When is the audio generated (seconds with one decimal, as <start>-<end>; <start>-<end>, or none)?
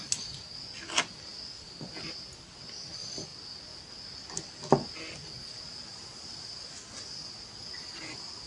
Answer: none